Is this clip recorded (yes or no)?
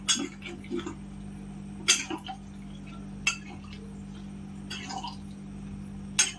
yes